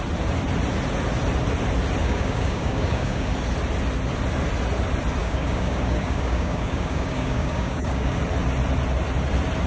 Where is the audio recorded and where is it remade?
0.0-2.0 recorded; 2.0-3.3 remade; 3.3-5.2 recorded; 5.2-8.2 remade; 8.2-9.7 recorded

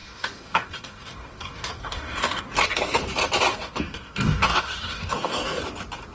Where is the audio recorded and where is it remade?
0.0-2.6 remade; 2.6-3.5 recorded; 3.5-5.6 remade; 5.6-6.1 recorded

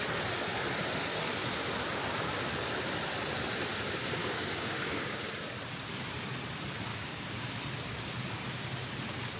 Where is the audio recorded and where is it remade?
0.0-4.2 recorded; 4.2-5.3 remade; 5.3-6.9 recorded; 6.9-7.5 remade; 7.5-9.4 recorded